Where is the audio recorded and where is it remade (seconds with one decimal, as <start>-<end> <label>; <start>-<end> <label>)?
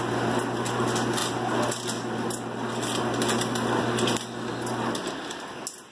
0.0-5.9 recorded